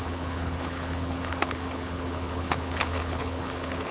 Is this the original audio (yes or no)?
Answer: no